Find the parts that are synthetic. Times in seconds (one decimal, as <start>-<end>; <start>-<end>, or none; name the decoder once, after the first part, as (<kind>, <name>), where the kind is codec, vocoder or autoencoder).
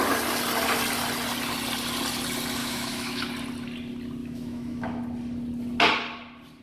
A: 2.6-3.3 (autoencoder, DAC-VAE); 4.2-5.0